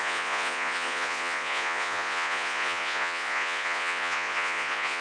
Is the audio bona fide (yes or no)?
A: no